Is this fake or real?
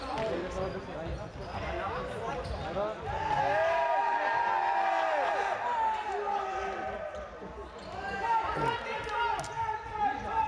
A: real